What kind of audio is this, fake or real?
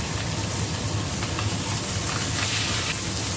real